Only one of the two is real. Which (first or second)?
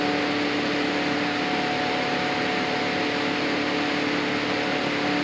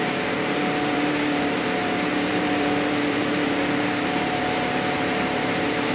first